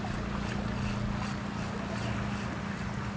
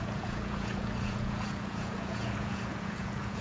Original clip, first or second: first